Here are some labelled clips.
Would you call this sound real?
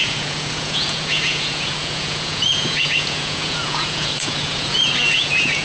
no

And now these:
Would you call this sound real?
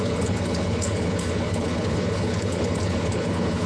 no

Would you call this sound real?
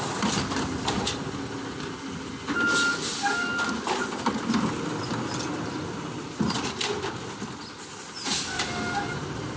yes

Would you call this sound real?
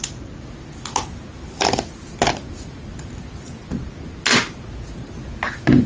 yes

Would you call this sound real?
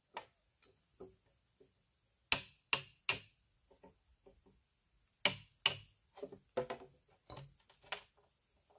yes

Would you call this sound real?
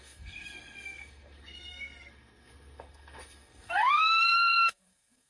no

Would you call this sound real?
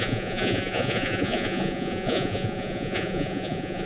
no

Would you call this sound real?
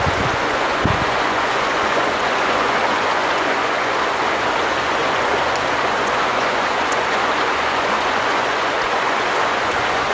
no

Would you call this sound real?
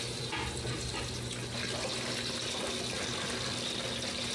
yes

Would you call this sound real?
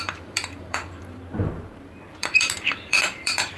no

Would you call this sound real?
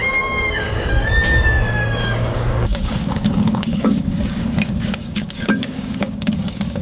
no